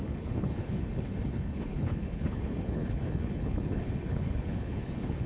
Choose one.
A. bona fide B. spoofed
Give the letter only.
B